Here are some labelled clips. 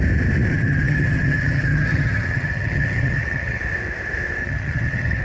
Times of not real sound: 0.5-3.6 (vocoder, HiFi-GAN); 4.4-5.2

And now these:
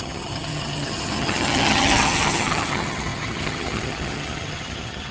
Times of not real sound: 0.0-5.1 (vocoder, HiFi-GAN)

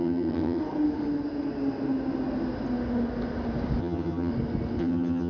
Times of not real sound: 0.0-0.6 (vocoder, HiFi-GAN); 3.8-4.3; 4.8-5.3

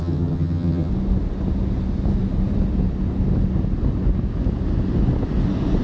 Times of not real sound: 0.0-0.9 (vocoder, HiFi-GAN)

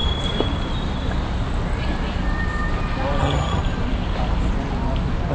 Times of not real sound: 3.2-3.6 (vocoder, HiFi-GAN)